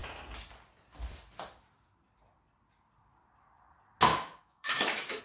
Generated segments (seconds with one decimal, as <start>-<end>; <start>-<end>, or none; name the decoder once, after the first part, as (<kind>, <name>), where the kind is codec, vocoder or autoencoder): 4.1-5.2 (autoencoder, DAC-VAE)